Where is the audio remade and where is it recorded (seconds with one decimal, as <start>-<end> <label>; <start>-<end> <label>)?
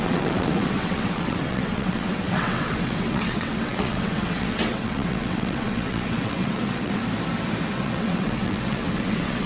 0.0-7.0 remade; 7.0-7.7 recorded; 7.7-9.5 remade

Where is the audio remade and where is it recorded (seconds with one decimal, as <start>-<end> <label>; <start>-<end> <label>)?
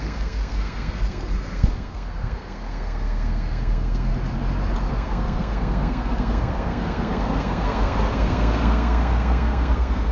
0.0-4.1 remade; 4.1-4.9 recorded; 4.9-10.1 remade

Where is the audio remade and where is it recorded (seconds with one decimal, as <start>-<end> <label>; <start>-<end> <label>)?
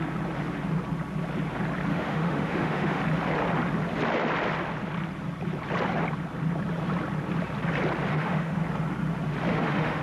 0.0-1.9 recorded; 1.9-3.0 remade; 3.0-8.1 recorded; 8.1-8.6 remade; 8.6-9.5 recorded; 9.5-10.0 remade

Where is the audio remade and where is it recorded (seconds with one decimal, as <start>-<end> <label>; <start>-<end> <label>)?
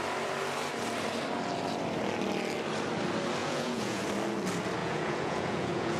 0.0-3.4 recorded; 3.4-4.0 remade; 4.0-4.8 recorded; 4.8-6.0 remade